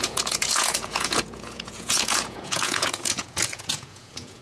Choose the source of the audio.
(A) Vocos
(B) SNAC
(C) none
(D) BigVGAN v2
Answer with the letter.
A